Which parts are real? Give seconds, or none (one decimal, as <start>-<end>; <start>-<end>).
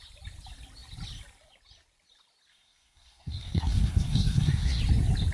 0.0-2.5; 4.8-5.3